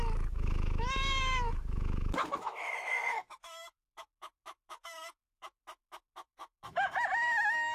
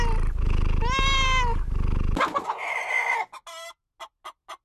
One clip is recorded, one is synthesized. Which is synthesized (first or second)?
first